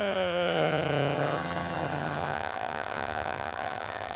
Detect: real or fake fake